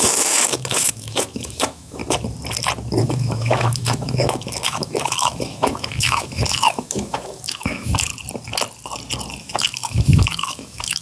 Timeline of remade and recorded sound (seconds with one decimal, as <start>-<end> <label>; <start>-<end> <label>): 0.0-2.0 remade; 2.0-3.0 recorded; 3.0-8.1 remade; 8.1-9.4 recorded; 9.4-11.0 remade